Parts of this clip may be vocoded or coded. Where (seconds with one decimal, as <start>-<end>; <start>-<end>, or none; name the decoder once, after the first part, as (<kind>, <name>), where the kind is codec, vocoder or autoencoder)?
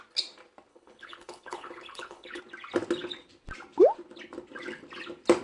0.7-2.4 (codec, HILCodec)